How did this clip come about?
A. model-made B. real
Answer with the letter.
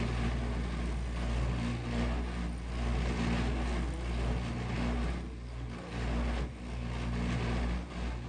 B